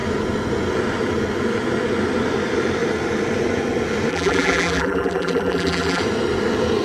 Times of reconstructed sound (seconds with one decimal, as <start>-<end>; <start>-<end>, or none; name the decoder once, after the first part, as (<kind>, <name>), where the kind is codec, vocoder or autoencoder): 4.1-6.0 (vocoder, BigVGAN v2)